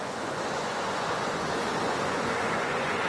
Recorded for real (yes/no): no